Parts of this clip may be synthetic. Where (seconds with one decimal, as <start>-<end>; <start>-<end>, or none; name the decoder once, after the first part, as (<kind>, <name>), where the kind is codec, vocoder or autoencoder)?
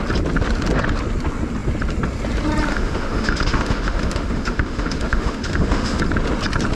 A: 2.7-6.0 (autoencoder, DAC-VAE)